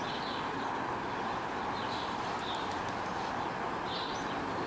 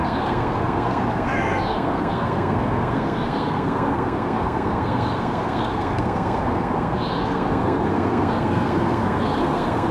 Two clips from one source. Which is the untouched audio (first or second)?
first